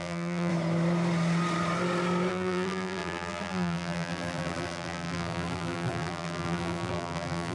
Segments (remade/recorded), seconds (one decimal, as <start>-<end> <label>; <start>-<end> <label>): 0.0-0.5 remade; 0.5-2.3 recorded; 2.3-7.5 remade